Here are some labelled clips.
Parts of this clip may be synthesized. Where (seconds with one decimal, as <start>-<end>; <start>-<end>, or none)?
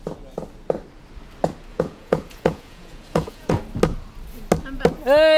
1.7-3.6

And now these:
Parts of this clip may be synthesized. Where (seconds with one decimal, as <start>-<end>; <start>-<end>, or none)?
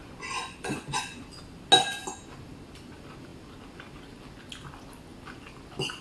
0.0-1.2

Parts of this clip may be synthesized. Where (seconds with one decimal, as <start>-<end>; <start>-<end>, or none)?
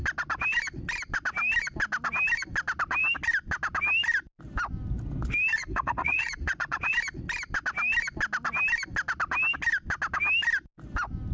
5.6-6.9